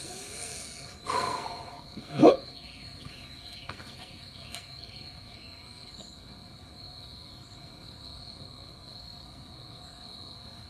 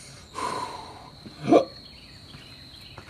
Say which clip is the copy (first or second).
first